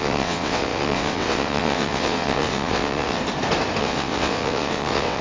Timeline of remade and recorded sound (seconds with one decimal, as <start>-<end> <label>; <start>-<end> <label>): 0.0-3.2 remade; 3.2-3.8 recorded; 3.8-5.2 remade